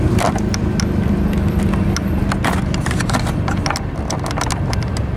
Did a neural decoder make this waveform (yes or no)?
no